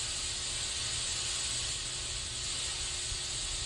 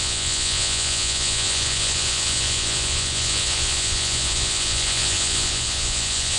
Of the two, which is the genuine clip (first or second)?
first